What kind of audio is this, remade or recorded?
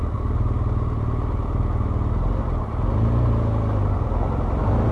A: recorded